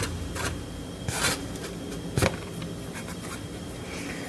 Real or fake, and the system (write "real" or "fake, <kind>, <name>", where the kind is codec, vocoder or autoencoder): real